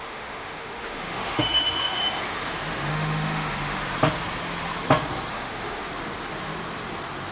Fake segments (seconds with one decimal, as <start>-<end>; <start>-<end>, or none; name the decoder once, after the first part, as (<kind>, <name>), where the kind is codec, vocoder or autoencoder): 0.0-2.0 (autoencoder, DAC-VAE); 2.9-3.8; 5.3-5.9